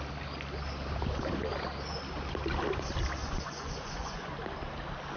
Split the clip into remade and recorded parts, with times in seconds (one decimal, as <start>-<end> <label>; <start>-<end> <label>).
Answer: 0.0-3.2 recorded; 3.2-4.3 remade; 4.3-5.2 recorded